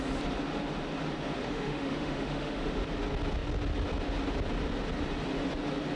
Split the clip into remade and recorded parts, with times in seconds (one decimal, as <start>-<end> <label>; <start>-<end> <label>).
0.0-1.4 recorded; 1.4-2.8 remade; 2.8-6.0 recorded